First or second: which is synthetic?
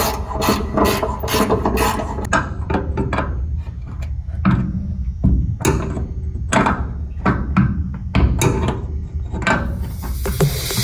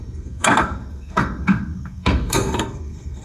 second